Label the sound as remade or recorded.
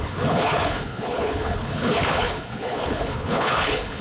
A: remade